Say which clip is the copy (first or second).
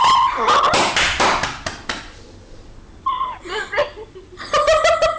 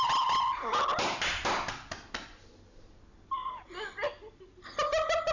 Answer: first